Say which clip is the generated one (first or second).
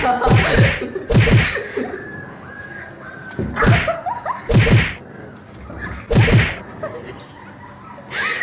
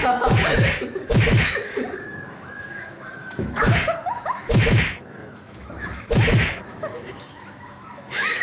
second